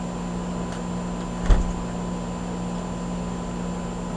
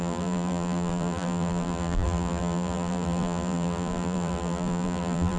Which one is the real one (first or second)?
first